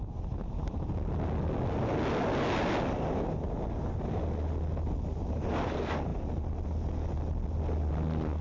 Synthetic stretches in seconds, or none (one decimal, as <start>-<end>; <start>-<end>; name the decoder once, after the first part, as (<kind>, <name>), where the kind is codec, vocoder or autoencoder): none